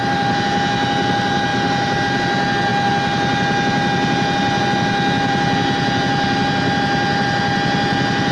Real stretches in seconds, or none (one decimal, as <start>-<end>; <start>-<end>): 0.0-8.3